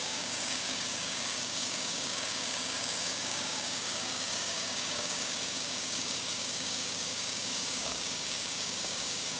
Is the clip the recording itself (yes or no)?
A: no